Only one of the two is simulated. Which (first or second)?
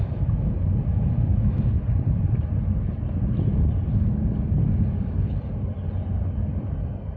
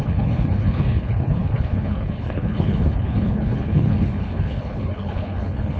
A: second